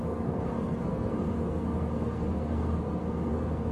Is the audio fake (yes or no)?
yes